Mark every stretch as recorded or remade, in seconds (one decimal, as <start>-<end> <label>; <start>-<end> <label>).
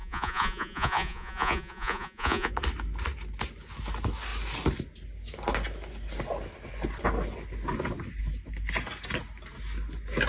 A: 0.0-2.5 remade; 2.5-10.3 recorded